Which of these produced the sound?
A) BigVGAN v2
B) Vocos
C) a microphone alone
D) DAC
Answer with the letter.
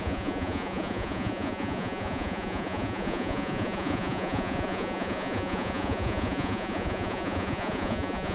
B